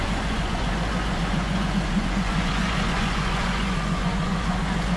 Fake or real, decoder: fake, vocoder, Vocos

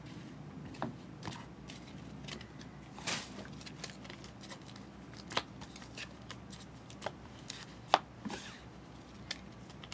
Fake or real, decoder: real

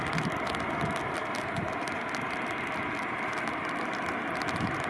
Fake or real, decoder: fake, vocoder, BigVGAN v2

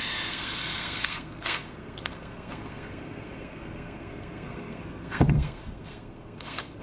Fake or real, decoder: fake, codec, SNAC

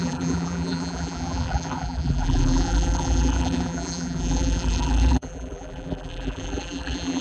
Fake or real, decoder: fake, vocoder, BigVGAN v2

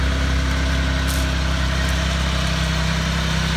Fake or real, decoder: real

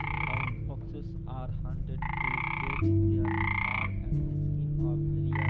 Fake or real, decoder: real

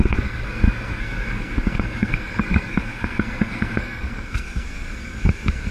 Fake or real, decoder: fake, codec, SNAC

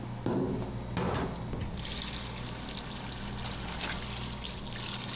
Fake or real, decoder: real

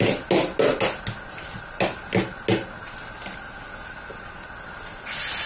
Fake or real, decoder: real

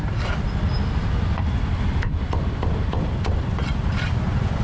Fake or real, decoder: real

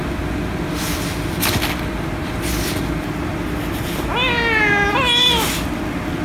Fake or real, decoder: real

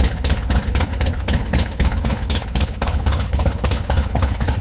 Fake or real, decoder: fake, codec, HILCodec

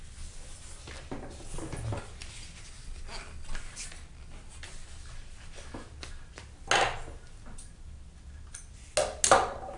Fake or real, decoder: real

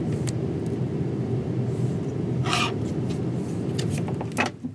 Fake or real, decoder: real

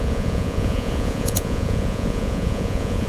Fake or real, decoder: fake, vocoder, Vocos